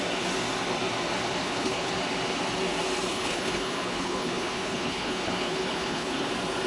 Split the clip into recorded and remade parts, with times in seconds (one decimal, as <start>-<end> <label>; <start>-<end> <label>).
0.0-1.4 recorded; 1.4-1.9 remade; 1.9-3.1 recorded; 3.1-6.3 remade; 6.3-6.7 recorded